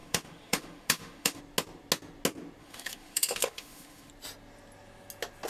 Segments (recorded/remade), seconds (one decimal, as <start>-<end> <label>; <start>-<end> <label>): 0.0-1.4 remade; 1.4-2.6 recorded; 2.6-4.1 remade; 4.1-5.5 recorded